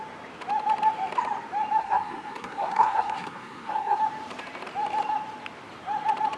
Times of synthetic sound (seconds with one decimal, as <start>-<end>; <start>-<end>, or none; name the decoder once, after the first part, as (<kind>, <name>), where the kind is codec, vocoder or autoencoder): 1.8-4.0 (codec, SNAC)